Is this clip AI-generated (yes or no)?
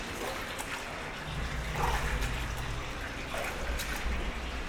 no